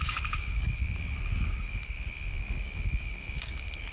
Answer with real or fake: fake